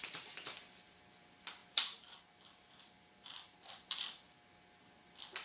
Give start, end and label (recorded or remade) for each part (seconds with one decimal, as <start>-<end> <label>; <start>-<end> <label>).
0.0-5.4 remade